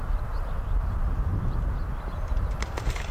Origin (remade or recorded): recorded